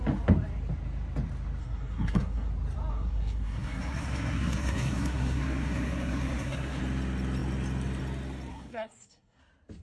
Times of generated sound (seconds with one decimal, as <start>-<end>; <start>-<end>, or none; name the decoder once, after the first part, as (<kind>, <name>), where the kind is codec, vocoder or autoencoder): 1.6-2.5 (codec, SNAC); 2.9-6.8; 8.5-9.4